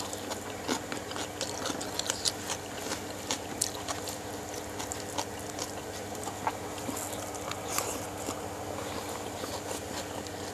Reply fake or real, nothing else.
real